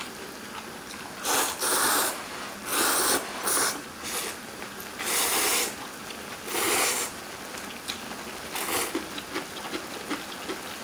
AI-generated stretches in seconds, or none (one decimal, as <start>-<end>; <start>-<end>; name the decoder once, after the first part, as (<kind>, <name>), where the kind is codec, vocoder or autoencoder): none